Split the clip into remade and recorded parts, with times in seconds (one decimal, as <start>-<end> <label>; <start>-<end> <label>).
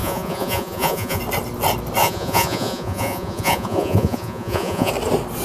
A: 0.0-1.2 remade; 1.2-2.0 recorded; 2.0-4.9 remade; 4.9-5.4 recorded